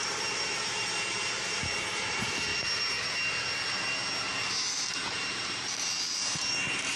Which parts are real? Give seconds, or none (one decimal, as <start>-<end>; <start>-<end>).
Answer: 2.5-4.7